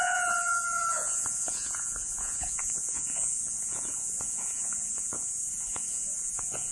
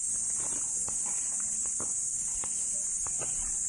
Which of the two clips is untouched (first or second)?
second